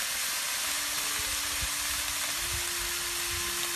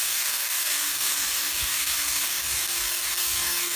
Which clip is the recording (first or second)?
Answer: first